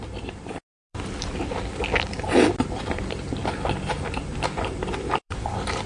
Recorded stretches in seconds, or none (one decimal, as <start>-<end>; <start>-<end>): 3.4-4.1